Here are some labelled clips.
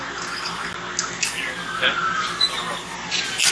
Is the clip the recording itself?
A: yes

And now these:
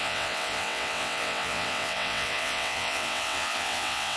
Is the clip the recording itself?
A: no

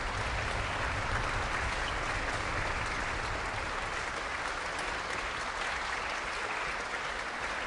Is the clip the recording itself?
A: yes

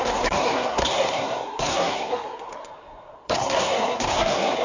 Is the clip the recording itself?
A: no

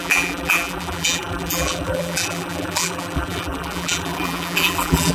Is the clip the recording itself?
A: no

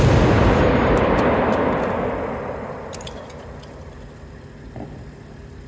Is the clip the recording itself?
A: yes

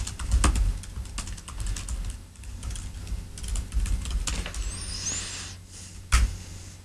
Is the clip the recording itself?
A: yes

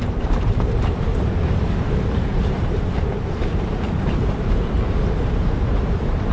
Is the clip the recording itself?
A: no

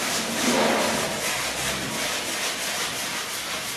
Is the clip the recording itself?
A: yes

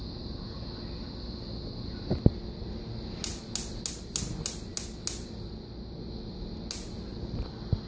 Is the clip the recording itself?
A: yes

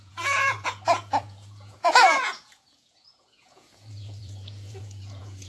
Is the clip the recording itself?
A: no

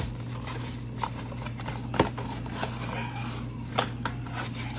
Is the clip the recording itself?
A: yes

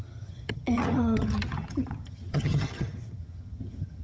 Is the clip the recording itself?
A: no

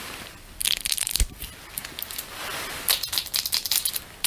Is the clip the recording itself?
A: yes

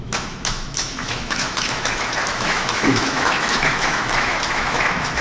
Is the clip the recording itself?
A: no